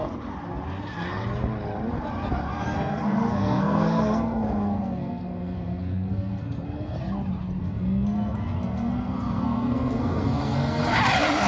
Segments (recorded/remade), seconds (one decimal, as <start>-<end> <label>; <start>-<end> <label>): 0.0-2.5 recorded; 2.5-7.0 remade; 7.0-7.6 recorded; 7.6-10.8 remade; 10.8-11.5 recorded